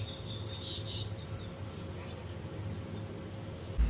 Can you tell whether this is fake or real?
real